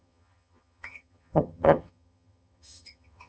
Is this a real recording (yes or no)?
no